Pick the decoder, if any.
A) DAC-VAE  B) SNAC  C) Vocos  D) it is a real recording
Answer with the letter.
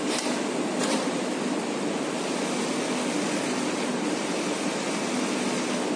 D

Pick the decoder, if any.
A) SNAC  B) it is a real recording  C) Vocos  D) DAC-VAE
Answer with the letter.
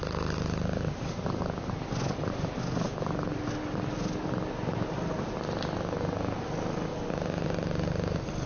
B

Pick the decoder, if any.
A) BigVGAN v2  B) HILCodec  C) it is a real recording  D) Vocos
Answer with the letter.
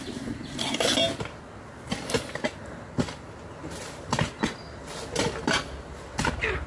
C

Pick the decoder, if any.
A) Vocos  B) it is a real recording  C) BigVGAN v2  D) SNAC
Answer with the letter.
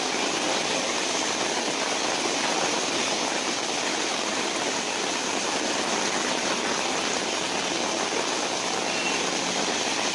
B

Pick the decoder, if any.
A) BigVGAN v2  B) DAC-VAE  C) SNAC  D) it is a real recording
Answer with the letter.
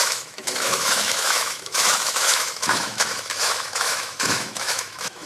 B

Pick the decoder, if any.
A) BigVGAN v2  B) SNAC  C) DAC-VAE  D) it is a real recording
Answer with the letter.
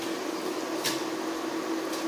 D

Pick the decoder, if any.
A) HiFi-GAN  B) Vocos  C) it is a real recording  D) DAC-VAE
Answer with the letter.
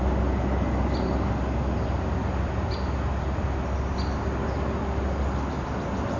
C